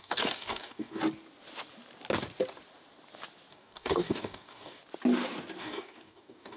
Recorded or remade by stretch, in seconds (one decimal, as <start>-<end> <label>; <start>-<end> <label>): 0.0-1.0 remade; 1.0-3.5 recorded; 3.5-4.8 remade; 4.8-5.6 recorded; 5.6-6.6 remade